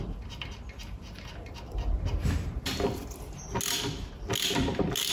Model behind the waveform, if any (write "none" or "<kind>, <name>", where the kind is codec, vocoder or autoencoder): none